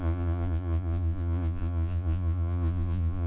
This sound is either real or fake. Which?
fake